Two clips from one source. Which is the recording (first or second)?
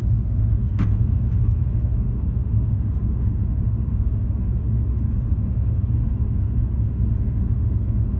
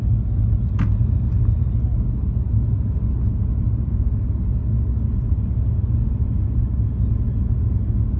second